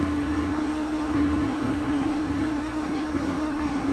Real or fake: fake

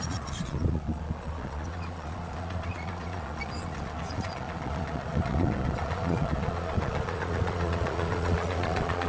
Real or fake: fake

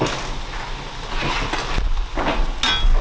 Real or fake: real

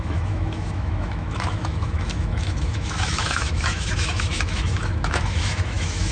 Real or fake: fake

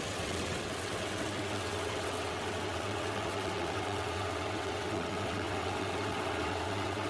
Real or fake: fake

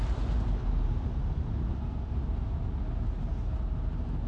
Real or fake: real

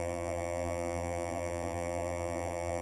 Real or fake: fake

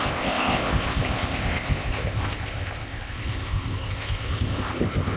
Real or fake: fake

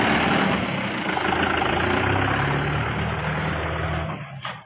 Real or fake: real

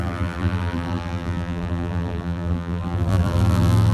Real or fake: fake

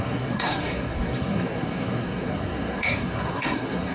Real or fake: fake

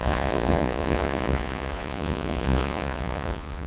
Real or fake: fake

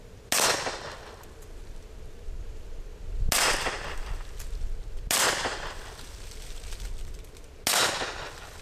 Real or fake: real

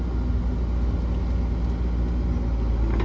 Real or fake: real